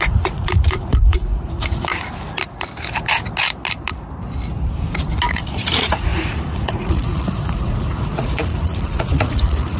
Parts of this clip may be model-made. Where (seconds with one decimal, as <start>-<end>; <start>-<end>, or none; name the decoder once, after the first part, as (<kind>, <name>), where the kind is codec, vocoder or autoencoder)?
0.0-1.9 (vocoder, Vocos); 5.3-9.8